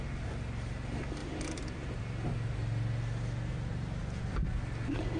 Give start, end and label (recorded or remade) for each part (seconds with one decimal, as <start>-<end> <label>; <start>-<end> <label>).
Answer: 0.0-1.2 recorded; 1.2-2.0 remade; 2.0-3.5 recorded; 3.5-4.0 remade; 4.0-5.2 recorded